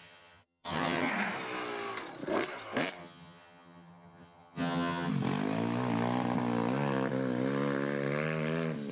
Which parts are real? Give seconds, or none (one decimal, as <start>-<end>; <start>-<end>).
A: 1.1-3.0; 5.1-8.9